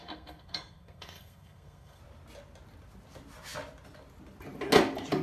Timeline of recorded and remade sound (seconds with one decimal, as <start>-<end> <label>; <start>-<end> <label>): 0.0-2.0 remade; 2.0-5.2 recorded